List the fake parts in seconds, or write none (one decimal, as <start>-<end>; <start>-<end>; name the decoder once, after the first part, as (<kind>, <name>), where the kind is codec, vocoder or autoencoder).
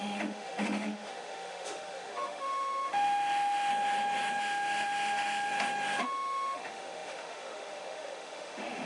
0.0-3.7 (autoencoder, DAC-VAE); 4.4-5.5; 6.0-8.9